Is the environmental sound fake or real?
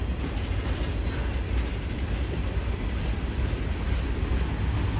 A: real